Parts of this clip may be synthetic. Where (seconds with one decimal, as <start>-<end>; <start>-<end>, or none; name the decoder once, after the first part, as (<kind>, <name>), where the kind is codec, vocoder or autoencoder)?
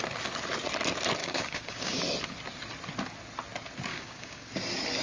1.2-2.0 (codec, DAC); 3.9-4.5